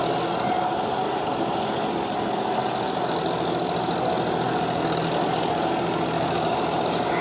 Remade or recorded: recorded